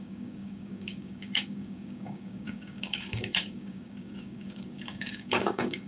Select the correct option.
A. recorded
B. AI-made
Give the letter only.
B